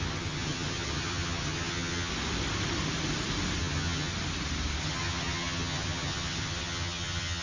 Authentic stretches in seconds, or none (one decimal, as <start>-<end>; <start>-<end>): 2.1-3.6; 4.1-4.8